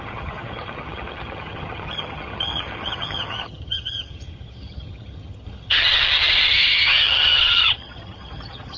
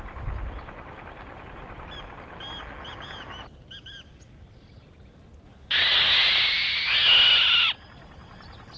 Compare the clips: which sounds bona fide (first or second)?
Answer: second